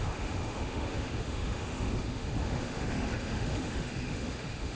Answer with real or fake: fake